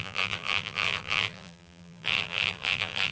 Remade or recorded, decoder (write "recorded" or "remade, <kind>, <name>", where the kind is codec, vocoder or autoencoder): remade, vocoder, BigVGAN v2